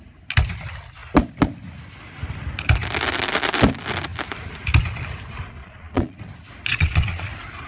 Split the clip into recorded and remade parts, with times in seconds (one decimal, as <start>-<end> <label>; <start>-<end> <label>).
0.0-5.6 recorded; 5.6-6.2 remade; 6.2-6.7 recorded; 6.7-7.3 remade; 7.3-7.7 recorded